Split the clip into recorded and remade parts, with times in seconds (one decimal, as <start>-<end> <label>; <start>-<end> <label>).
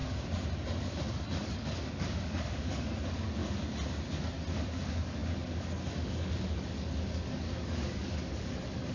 0.0-0.8 recorded; 0.8-3.4 remade; 3.4-4.5 recorded; 4.5-8.9 remade